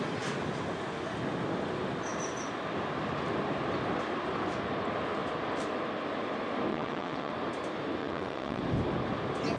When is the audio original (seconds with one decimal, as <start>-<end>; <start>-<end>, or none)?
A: 0.0-6.7; 7.3-8.0; 8.6-9.6